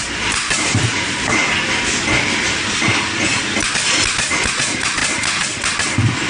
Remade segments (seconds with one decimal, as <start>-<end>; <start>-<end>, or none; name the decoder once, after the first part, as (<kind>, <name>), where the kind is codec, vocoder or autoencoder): 0.0-1.4 (vocoder, BigVGAN v2); 4.6-5.0